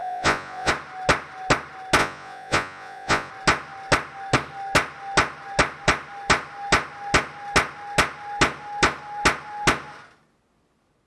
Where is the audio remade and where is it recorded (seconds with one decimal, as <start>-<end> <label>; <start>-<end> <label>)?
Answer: 0.0-0.7 remade; 0.7-2.0 recorded; 2.0-3.3 remade; 3.3-11.1 recorded